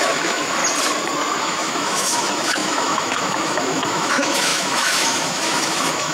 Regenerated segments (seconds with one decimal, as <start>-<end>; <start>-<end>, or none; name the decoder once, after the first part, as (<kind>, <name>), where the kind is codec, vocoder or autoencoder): 0.0-0.6 (autoencoder, DAC-VAE); 1.4-6.1